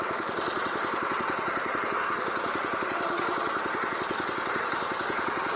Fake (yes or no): no